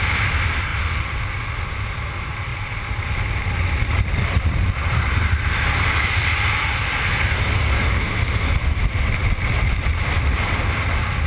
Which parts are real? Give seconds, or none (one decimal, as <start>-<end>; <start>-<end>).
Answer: 0.0-0.7; 1.2-2.5; 5.9-6.7; 7.6-11.3

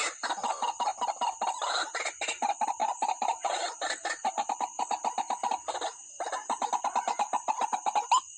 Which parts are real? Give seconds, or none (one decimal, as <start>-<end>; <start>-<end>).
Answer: 0.0-2.8; 3.7-5.7; 6.9-8.4

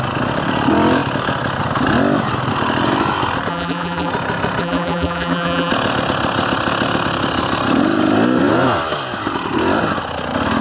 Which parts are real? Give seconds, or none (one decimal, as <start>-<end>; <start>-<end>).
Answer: 0.0-3.5; 4.1-4.6; 5.7-10.6

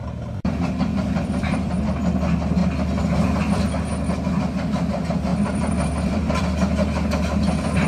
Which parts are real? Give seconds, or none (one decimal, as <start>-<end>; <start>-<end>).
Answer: 1.8-5.3; 6.4-7.9

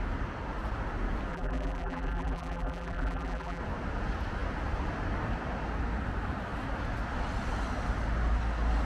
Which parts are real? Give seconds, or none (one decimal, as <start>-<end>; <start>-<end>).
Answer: 0.0-1.3; 3.6-8.8

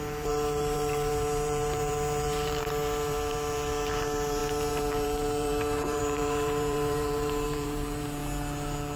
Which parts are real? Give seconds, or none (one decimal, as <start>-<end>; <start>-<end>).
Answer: 8.2-9.0

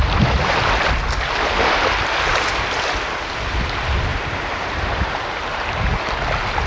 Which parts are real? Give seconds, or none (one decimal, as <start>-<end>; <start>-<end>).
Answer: 0.0-4.1; 5.7-6.7